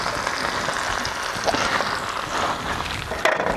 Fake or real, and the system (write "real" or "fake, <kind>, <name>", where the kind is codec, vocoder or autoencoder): real